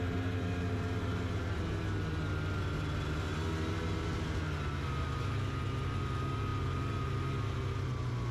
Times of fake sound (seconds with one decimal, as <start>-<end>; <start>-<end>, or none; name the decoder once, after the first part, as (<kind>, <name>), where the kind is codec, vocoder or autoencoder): none